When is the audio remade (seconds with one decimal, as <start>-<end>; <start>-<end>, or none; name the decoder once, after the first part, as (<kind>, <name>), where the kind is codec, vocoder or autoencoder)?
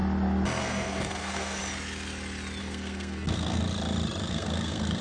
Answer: 0.6-1.6 (codec, SNAC); 2.6-3.6; 4.3-5.0